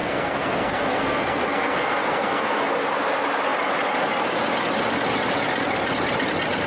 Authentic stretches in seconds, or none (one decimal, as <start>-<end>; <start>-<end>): 2.6-6.7